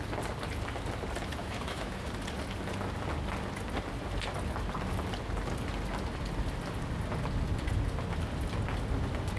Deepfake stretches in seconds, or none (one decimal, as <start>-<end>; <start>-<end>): 1.4-2.1